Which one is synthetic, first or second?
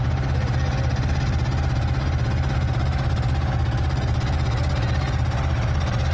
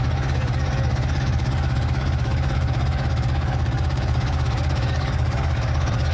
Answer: second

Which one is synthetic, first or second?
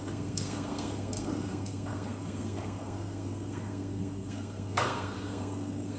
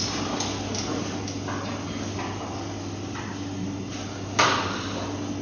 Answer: first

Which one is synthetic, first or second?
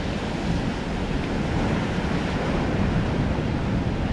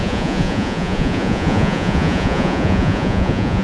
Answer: second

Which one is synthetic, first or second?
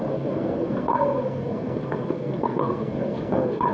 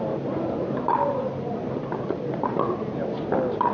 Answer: first